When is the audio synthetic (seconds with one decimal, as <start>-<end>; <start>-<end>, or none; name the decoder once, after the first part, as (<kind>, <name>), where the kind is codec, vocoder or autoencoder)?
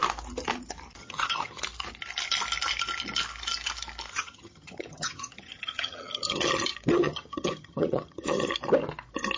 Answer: 1.0-1.6 (vocoder, HiFi-GAN); 4.1-6.5; 6.9-8.5